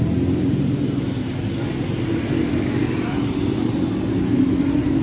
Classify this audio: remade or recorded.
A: recorded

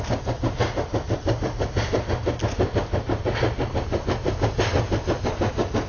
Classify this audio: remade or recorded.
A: recorded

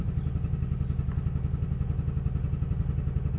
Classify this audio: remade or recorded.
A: recorded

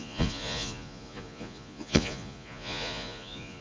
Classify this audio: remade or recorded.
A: remade